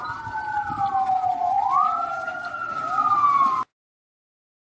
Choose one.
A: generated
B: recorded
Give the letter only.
B